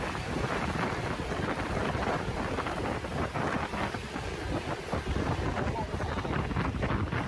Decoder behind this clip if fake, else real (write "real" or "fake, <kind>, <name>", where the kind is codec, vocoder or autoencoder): real